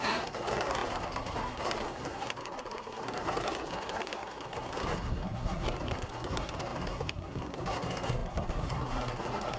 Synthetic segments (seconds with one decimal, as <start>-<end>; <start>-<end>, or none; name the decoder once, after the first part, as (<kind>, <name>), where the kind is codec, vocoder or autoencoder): 0.0-9.6 (codec, SNAC)